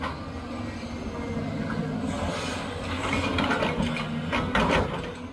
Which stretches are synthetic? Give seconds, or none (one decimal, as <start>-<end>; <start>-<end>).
none